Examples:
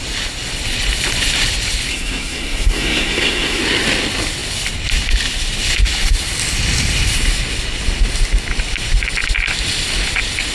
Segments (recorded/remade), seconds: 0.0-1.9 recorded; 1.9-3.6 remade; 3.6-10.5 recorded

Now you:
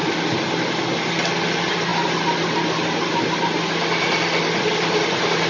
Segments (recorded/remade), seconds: 0.0-5.5 recorded

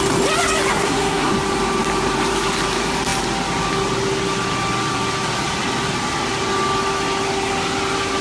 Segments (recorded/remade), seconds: 0.0-0.7 recorded; 0.7-1.3 remade; 1.3-8.2 recorded

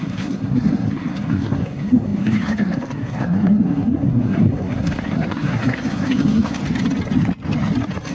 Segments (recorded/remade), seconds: 0.0-6.6 remade; 6.6-8.1 recorded

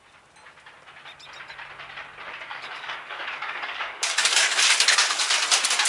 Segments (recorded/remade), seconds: 0.0-2.5 recorded; 2.5-5.3 remade; 5.3-5.9 recorded